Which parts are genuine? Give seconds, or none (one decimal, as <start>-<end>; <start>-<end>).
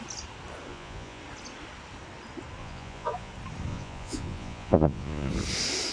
0.0-0.7; 1.2-2.6; 3.3-3.7; 5.3-5.9